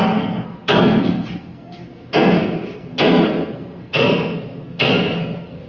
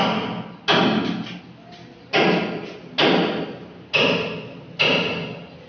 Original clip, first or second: second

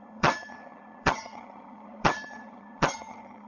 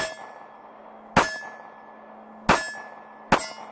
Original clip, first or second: second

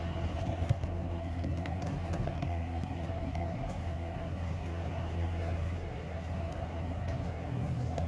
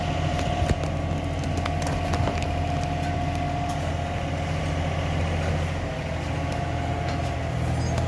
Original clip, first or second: second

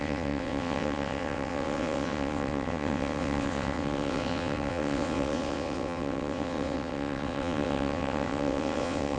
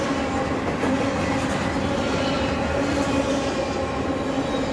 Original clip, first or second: second